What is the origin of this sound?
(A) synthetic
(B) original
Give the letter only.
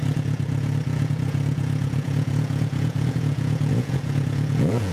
A